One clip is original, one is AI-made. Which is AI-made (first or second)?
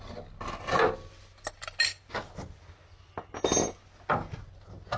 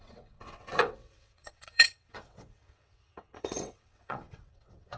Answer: second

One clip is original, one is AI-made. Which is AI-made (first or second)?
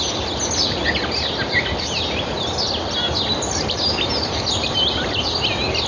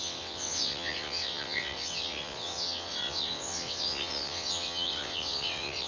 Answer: second